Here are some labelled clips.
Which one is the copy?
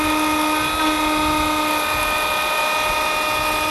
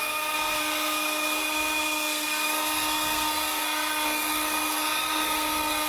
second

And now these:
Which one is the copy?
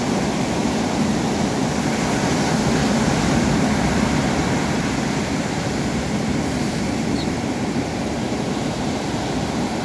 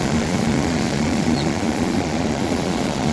second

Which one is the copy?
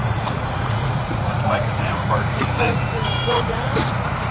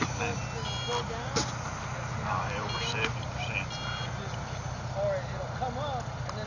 first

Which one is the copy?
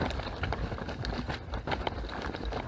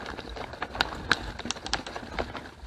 first